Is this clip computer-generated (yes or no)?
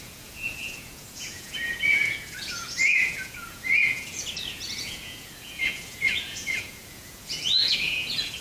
yes